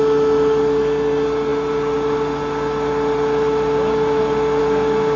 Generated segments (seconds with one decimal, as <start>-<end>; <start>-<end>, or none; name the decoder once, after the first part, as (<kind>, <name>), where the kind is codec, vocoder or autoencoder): none